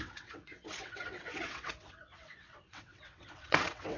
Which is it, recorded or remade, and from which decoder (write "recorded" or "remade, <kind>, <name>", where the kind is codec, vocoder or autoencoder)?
remade, vocoder, WaveNeXt